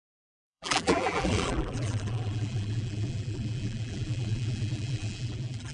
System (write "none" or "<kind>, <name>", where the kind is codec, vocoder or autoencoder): vocoder, BigVGAN v2